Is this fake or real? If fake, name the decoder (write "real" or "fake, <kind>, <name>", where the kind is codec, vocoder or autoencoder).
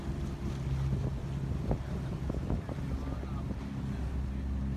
real